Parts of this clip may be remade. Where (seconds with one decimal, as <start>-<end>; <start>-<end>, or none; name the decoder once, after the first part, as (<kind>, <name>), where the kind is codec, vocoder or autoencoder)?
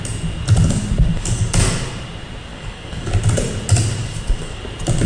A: 1.1-1.6 (codec, DAC); 2.5-3.1; 4.0-4.6